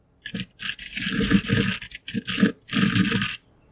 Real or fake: real